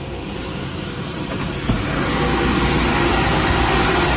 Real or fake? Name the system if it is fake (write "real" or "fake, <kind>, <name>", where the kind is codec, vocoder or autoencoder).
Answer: real